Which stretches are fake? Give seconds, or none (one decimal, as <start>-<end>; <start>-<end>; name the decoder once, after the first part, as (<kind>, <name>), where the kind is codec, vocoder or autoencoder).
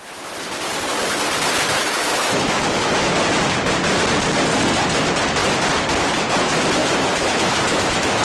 1.8-2.9 (autoencoder, DAC-VAE); 6.8-8.2